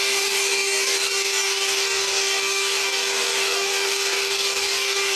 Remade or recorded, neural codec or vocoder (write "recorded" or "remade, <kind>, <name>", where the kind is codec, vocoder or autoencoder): remade, codec, DAC